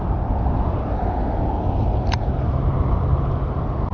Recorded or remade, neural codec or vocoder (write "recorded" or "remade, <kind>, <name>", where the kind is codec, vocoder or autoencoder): recorded